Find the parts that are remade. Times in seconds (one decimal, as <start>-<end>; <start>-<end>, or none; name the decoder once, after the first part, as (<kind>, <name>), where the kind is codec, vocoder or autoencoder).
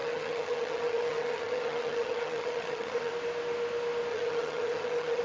0.0-3.1 (vocoder, HiFi-GAN); 4.1-5.2